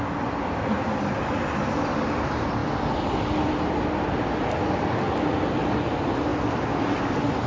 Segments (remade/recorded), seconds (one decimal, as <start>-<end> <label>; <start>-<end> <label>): 0.0-7.5 recorded